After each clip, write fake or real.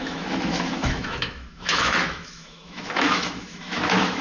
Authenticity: fake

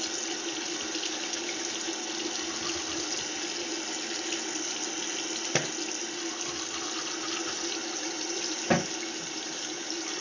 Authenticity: real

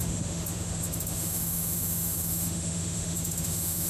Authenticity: fake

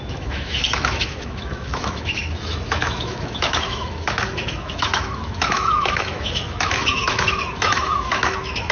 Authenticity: fake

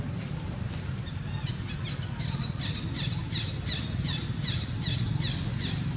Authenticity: real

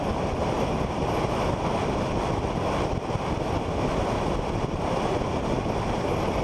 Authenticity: real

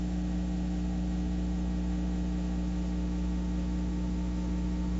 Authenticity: fake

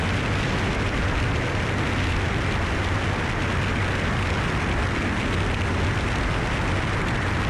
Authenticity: real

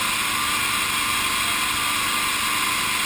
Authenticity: real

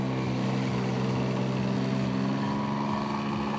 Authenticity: real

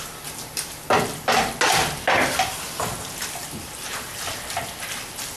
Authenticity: real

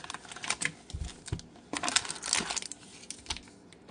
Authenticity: real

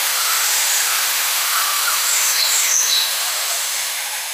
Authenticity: fake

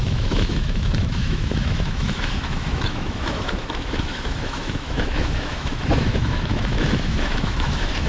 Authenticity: fake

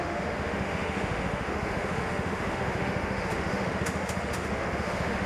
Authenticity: fake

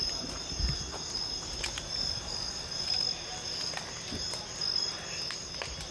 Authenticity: real